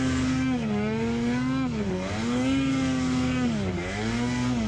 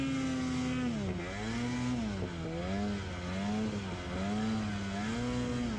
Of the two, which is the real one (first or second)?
second